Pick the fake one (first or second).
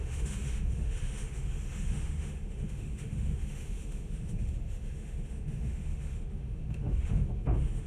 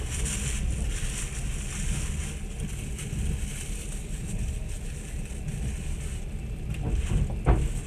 first